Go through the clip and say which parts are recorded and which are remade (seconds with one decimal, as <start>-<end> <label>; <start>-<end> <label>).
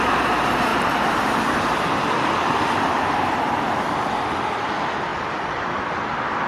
0.0-0.7 recorded; 0.7-4.1 remade; 4.1-6.5 recorded